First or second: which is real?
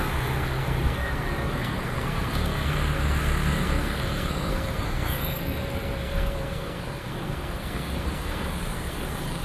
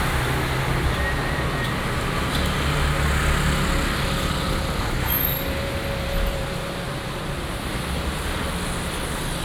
second